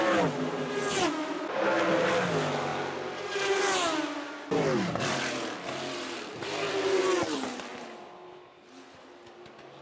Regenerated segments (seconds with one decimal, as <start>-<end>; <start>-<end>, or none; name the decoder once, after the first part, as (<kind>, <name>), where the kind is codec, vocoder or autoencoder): none